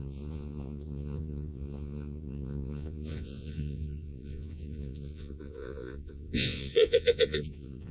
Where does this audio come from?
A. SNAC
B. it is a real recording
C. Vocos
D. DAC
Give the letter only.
C